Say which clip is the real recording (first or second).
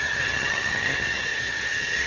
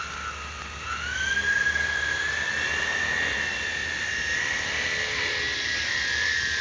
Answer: second